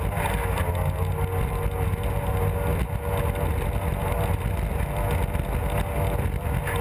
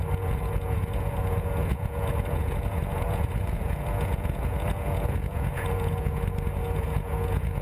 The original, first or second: first